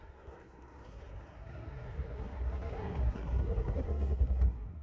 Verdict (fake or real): fake